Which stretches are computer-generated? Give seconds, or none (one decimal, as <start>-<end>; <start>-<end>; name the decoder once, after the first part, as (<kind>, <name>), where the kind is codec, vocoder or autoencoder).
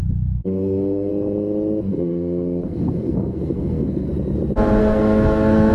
0.4-1.1 (codec, SNAC); 1.9-4.1; 4.8-5.7